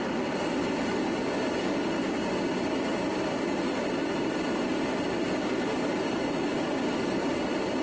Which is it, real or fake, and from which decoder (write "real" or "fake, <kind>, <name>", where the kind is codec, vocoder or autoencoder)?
real